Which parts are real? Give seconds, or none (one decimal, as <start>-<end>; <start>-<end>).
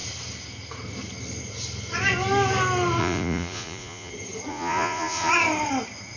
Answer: 0.0-3.0; 4.1-4.5; 5.3-6.2